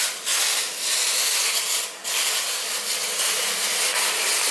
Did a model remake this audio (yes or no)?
no